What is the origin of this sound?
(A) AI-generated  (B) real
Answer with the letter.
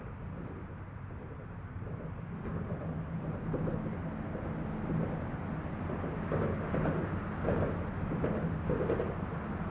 B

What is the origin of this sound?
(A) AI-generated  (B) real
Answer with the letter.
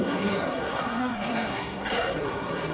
A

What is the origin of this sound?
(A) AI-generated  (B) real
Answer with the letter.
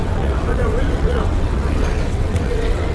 A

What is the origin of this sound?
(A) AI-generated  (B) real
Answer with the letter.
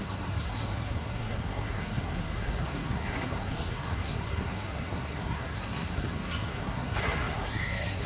A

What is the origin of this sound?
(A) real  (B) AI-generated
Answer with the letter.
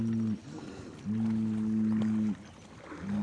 A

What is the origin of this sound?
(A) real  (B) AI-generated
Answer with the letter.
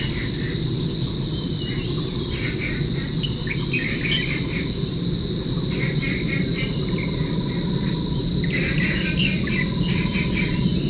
A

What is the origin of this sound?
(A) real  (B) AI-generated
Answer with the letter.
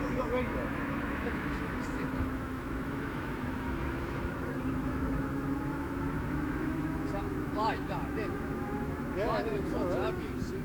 B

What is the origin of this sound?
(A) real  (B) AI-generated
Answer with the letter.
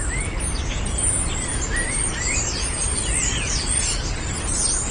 A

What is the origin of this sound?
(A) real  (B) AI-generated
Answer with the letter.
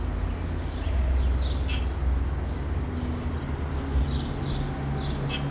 A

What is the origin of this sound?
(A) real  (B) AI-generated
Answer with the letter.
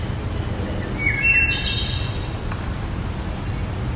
A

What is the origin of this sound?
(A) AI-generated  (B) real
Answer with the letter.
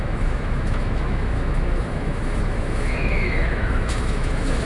A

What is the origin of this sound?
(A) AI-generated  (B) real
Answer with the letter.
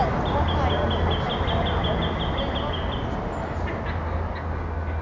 B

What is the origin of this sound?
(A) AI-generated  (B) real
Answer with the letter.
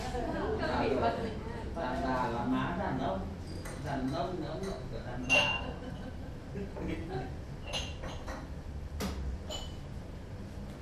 B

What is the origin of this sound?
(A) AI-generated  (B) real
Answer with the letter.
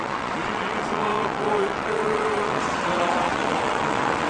A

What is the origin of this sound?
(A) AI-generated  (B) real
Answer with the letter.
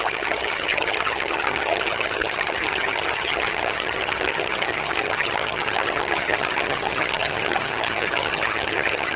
A